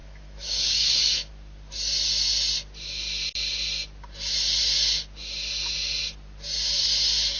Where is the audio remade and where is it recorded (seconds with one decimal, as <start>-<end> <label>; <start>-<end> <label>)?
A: 0.0-1.3 remade; 1.3-7.4 recorded

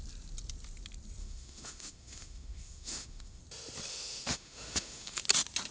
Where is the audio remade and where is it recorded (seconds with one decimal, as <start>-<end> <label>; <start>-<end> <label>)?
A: 0.0-1.2 recorded; 1.2-3.4 remade; 3.4-3.9 recorded; 3.9-5.2 remade; 5.2-5.7 recorded